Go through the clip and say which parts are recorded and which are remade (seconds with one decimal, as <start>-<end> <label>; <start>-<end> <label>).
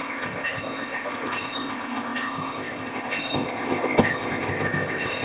0.0-5.2 remade